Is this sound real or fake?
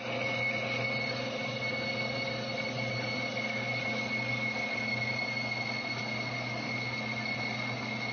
real